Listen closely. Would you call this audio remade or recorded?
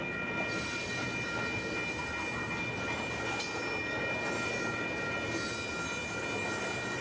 recorded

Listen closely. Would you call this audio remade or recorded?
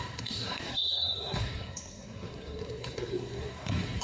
remade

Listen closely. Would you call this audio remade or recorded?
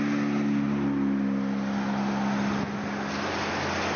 recorded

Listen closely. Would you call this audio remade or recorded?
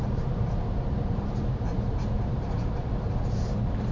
remade